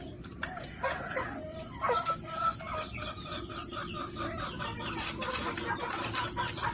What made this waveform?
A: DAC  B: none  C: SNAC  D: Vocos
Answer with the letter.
B